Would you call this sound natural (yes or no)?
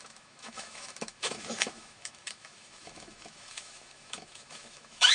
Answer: no